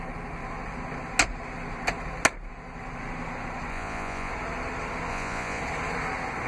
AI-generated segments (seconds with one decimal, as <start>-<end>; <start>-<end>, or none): 3.7-4.3; 5.1-5.6

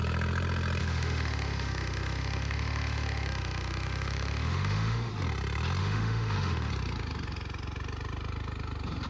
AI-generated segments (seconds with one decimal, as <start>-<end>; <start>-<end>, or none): 0.8-5.1; 5.8-6.7

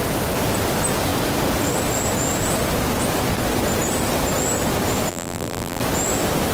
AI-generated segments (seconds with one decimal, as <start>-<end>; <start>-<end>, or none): 5.1-5.8

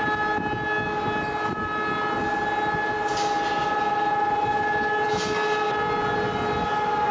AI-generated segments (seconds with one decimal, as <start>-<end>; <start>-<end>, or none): none

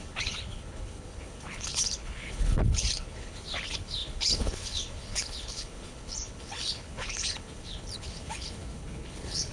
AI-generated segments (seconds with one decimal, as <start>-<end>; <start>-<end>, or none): 0.0-9.5

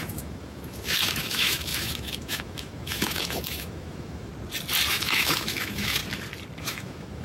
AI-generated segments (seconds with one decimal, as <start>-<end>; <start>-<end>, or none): 0.0-4.3; 4.9-6.0; 6.6-7.2

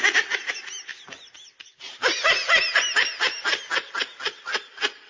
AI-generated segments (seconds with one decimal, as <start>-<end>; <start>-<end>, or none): none